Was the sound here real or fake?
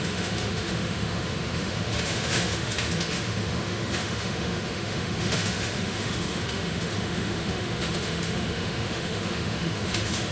fake